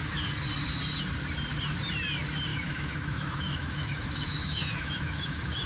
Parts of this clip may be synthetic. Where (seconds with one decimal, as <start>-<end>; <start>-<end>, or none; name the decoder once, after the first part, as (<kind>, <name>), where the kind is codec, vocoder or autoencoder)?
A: 2.5-5.7 (autoencoder, DAC-VAE)